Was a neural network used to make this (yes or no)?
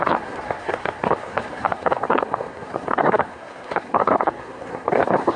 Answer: yes